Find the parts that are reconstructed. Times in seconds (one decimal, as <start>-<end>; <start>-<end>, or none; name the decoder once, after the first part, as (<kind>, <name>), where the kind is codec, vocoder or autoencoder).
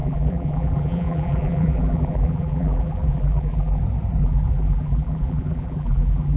0.0-3.8 (vocoder, BigVGAN v2); 4.2-6.4